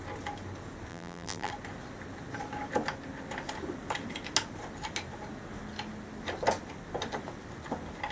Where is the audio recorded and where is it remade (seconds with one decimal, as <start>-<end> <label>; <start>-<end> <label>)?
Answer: 0.0-0.9 recorded; 0.9-1.5 remade; 1.5-8.1 recorded